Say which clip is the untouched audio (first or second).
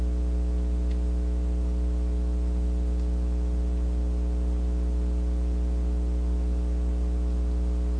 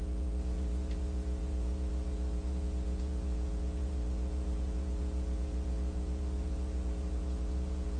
first